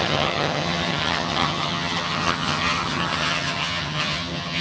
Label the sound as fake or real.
fake